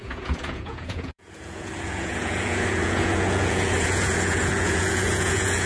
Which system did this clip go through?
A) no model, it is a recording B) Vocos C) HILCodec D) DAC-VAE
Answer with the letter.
B